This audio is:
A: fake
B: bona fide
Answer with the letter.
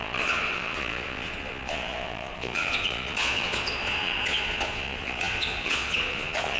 A